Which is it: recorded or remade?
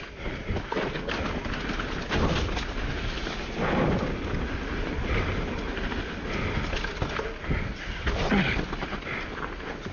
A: recorded